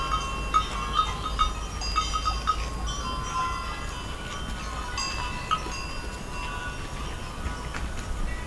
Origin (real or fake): real